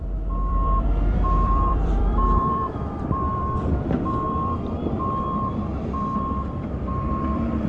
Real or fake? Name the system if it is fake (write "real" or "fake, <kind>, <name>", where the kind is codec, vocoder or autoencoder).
fake, vocoder, BigVGAN v2